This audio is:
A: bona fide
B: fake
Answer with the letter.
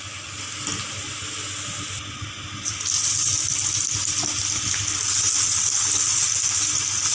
A